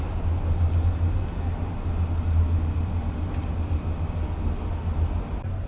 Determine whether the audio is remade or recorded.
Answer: recorded